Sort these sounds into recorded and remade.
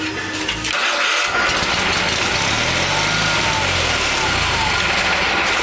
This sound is recorded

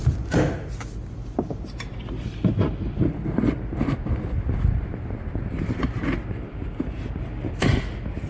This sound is recorded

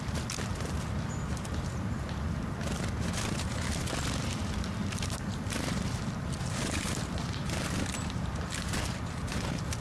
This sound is remade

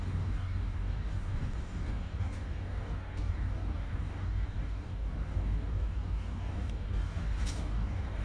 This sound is remade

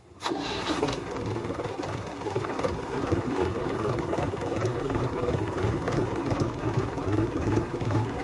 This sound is remade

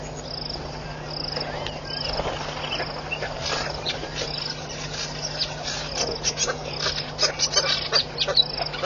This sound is recorded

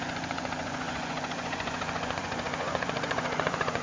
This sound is remade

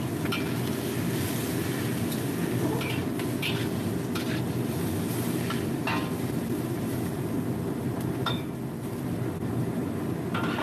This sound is recorded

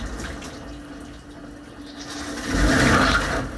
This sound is recorded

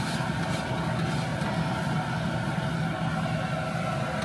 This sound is recorded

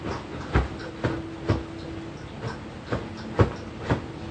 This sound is recorded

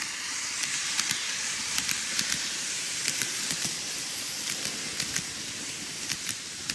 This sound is remade